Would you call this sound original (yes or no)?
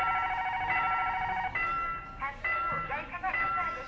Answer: yes